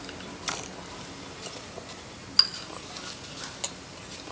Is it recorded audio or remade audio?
recorded